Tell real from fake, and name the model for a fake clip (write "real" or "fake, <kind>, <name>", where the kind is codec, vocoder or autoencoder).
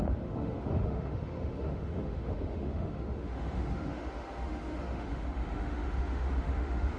fake, autoencoder, DAC-VAE